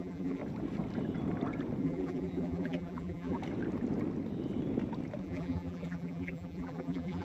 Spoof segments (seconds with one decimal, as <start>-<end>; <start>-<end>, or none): 0.0-0.4; 1.8-3.4; 5.2-7.2

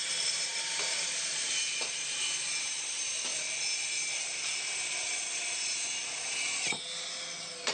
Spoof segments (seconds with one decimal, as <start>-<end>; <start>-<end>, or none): 0.0-3.3

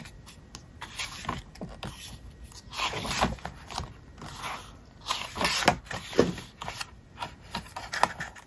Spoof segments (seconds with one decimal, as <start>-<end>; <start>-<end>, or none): none

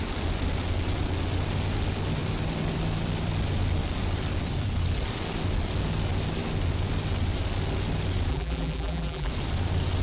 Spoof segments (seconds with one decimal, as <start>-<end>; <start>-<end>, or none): 8.3-9.3

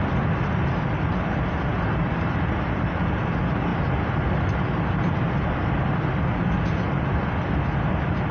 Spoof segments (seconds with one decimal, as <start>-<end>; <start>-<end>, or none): none

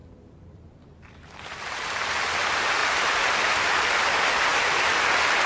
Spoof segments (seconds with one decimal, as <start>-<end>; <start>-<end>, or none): 0.0-2.0

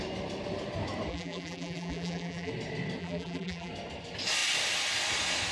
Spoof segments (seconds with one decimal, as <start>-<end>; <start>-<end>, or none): 1.1-2.5; 3.0-3.7